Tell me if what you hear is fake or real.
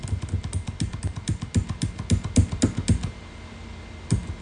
real